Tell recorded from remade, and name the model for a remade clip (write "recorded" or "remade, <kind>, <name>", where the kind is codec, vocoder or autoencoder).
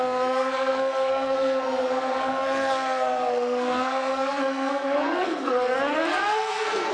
remade, codec, SNAC